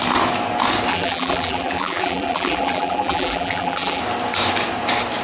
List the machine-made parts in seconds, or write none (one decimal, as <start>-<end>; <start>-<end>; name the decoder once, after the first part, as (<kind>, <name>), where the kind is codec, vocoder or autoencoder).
0.9-4.0 (vocoder, BigVGAN v2)